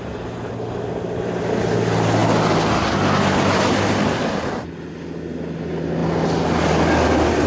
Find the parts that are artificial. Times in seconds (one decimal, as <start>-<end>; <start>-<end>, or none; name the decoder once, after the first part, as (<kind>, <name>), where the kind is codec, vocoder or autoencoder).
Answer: none